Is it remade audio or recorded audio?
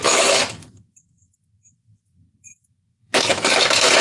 remade